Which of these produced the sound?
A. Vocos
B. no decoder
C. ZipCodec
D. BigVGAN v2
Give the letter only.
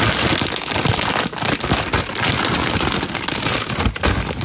B